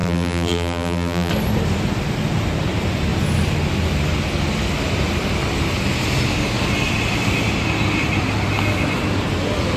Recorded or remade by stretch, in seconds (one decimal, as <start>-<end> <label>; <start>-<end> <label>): 0.0-1.3 remade; 1.3-9.8 recorded